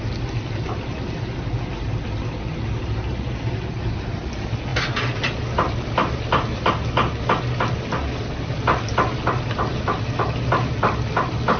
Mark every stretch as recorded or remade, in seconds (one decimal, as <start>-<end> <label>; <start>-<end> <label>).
0.0-11.6 recorded